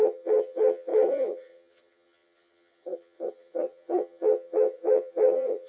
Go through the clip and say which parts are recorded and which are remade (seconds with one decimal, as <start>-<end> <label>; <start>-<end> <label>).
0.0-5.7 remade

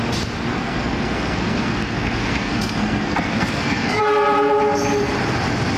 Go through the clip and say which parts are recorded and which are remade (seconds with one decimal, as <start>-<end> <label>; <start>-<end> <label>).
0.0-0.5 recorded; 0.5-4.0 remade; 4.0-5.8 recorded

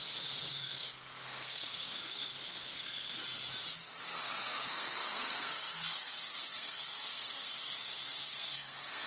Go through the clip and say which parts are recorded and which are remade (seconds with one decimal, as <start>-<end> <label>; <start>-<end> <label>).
0.0-0.5 recorded; 0.5-3.2 remade; 3.2-4.0 recorded; 4.0-9.1 remade

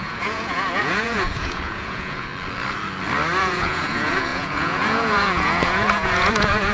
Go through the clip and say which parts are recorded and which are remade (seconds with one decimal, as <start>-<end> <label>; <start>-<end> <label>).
0.0-2.3 remade; 2.3-3.4 recorded; 3.4-6.7 remade

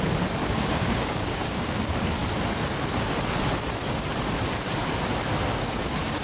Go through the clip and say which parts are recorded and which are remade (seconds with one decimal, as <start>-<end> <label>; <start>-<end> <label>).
0.0-0.7 recorded; 0.7-1.8 remade; 1.8-6.2 recorded

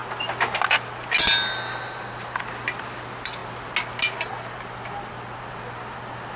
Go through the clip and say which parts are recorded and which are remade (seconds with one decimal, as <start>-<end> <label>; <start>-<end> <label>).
0.0-6.4 recorded

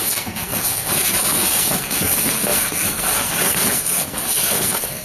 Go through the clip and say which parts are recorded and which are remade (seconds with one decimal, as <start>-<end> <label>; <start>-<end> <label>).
0.0-5.0 remade